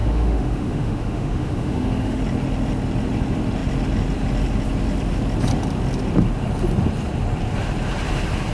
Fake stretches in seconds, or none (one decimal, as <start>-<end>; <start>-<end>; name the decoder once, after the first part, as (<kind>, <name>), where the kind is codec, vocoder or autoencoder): 0.0-2.2 (autoencoder, DAC-VAE)